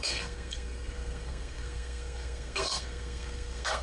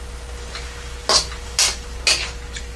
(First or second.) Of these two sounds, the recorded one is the second